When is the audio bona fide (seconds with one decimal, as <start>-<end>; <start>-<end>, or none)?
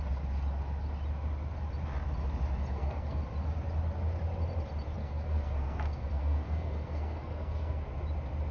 0.0-2.7; 3.2-5.0; 7.8-8.5